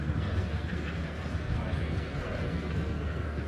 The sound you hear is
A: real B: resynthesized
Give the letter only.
B